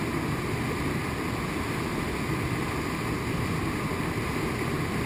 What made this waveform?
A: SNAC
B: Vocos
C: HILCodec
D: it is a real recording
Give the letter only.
D